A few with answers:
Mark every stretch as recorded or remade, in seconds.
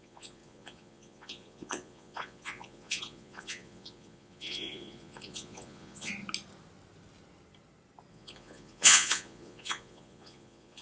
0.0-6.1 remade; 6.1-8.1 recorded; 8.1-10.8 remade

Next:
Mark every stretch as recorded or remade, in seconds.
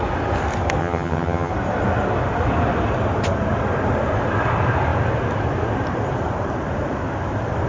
0.0-0.8 recorded; 0.8-1.5 remade; 1.5-7.7 recorded